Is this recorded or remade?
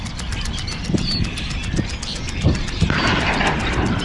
recorded